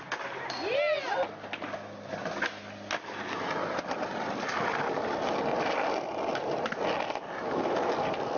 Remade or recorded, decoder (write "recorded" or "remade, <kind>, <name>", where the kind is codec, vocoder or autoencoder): recorded